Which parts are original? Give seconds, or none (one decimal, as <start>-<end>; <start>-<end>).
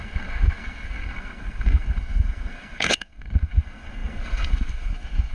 none